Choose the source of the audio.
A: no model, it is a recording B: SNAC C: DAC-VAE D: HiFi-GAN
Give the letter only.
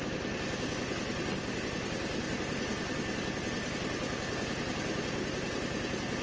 A